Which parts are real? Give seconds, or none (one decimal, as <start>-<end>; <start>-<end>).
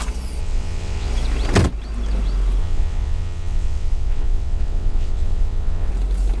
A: 0.0-0.4; 1.1-2.6; 5.9-6.4